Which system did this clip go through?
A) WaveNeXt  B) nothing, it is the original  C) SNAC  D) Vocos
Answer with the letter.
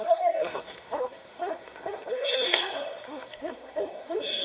C